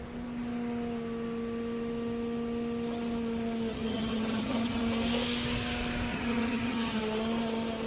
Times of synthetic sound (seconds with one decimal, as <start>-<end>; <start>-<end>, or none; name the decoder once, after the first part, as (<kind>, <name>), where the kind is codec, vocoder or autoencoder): 3.7-4.8 (vocoder, HiFi-GAN); 6.1-7.0